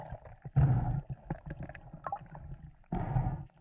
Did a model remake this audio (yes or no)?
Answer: no